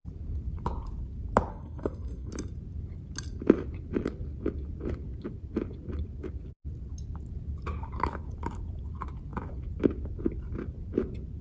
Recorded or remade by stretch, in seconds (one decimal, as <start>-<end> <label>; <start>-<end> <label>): 0.0-1.5 recorded; 1.5-2.3 remade; 2.3-11.4 recorded